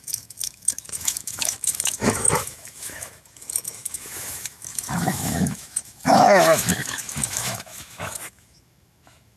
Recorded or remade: remade